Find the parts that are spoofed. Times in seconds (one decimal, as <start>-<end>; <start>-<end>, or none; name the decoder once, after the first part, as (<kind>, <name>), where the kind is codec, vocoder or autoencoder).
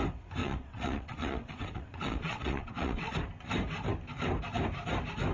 0.4-3.1 (vocoder, WaveNeXt)